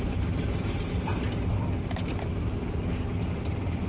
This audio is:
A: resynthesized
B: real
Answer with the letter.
B